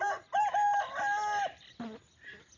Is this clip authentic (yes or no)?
yes